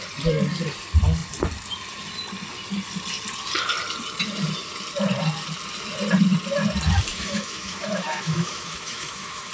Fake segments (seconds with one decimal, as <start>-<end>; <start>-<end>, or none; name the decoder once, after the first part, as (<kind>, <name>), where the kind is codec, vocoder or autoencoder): 7.1-9.5 (autoencoder, DAC-VAE)